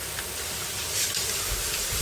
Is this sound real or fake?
fake